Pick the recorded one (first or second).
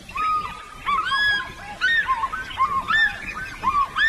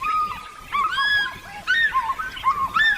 first